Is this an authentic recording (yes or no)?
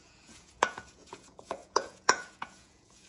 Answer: no